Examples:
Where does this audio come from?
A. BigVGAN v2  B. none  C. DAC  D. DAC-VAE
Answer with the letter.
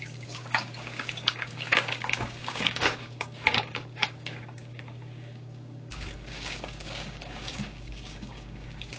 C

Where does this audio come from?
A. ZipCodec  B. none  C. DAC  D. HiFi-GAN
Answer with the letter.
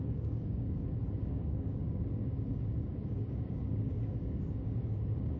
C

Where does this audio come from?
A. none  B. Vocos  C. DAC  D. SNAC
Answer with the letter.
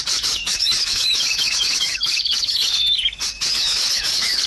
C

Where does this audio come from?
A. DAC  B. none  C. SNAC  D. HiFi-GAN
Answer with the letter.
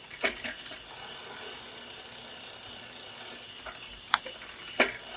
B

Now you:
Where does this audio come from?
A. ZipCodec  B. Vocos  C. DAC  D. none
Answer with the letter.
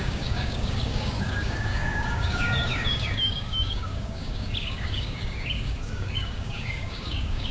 C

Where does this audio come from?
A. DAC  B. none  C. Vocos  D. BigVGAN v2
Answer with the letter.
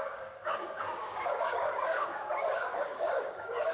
A